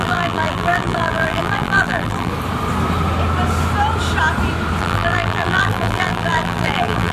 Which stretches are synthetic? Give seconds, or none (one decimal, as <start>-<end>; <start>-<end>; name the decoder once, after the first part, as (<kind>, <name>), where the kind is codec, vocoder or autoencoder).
0.0-2.3 (vocoder, BigVGAN v2); 4.8-7.1